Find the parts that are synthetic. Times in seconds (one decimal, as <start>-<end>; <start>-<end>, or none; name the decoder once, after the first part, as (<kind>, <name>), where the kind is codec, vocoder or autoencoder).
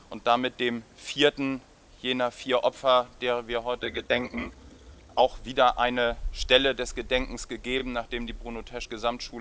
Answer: 3.8-5.2 (vocoder, HiFi-GAN)